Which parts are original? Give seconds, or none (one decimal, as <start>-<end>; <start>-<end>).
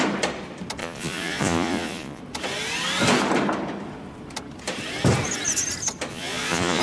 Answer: 0.0-0.8; 2.2-6.1